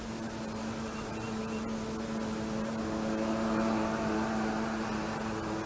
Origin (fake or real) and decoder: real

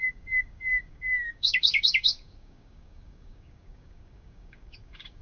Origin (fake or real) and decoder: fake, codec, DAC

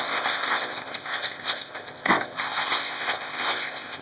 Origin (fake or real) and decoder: fake, codec, ZipCodec